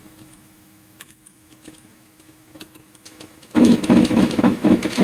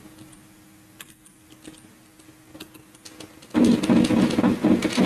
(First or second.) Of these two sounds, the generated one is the first